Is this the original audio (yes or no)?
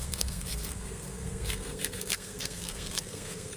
no